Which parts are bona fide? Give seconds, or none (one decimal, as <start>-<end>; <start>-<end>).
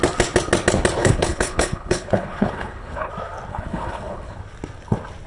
0.0-1.0; 3.1-3.5; 4.4-5.3